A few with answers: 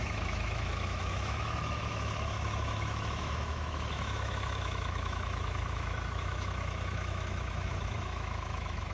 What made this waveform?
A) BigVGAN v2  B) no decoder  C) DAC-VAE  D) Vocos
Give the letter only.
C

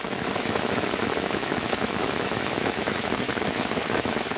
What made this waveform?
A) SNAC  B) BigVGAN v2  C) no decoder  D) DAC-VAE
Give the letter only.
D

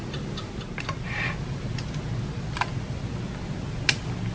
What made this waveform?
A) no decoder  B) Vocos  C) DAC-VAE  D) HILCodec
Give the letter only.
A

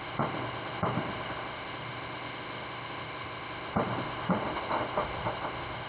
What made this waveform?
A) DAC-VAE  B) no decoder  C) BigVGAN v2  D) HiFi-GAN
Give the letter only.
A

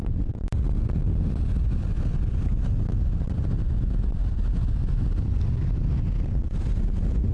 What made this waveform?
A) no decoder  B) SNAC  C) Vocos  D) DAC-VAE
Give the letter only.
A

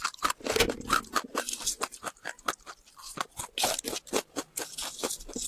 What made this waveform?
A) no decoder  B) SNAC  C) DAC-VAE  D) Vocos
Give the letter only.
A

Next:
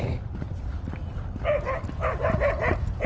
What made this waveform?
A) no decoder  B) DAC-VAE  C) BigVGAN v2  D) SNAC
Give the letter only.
A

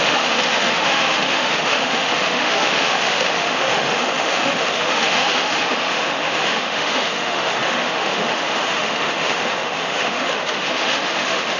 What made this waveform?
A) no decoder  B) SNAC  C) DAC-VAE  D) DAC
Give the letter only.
C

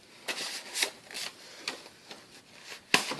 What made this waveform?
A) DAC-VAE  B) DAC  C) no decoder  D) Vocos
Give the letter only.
C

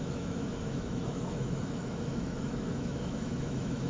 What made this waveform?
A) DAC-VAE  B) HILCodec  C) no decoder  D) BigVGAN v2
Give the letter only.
A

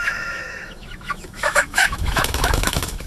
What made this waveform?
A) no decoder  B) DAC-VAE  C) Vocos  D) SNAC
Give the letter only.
B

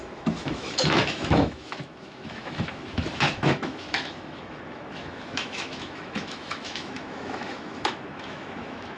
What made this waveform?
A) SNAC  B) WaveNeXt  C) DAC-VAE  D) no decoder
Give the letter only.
C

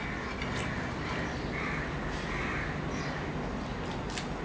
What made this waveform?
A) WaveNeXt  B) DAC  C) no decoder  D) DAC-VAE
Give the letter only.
C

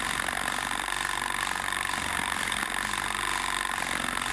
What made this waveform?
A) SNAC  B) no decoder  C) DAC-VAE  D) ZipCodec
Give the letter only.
B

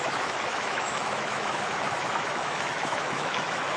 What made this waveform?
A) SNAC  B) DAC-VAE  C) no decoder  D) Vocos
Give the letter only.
B